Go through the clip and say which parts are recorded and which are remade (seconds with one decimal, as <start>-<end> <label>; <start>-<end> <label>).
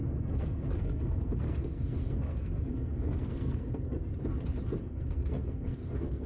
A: 0.0-4.1 remade; 4.1-4.8 recorded; 4.8-6.3 remade